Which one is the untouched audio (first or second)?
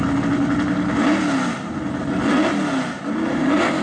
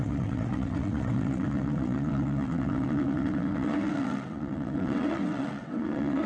first